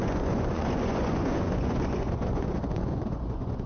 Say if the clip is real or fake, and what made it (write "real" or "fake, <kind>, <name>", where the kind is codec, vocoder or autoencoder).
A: fake, vocoder, Vocos